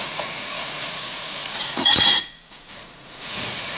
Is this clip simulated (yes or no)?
yes